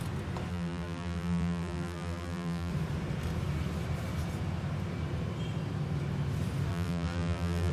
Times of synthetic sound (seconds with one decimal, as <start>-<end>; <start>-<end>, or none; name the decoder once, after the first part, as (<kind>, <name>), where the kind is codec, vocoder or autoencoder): 0.5-2.7 (vocoder, BigVGAN v2); 6.7-7.7